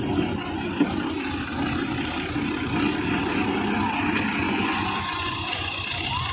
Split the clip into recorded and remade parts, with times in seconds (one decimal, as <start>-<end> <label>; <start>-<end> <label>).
0.0-4.4 recorded; 4.4-5.8 remade; 5.8-6.3 recorded